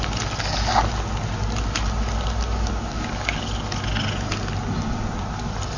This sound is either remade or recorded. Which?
recorded